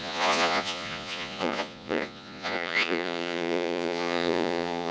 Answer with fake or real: fake